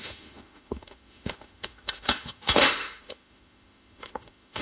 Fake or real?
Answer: fake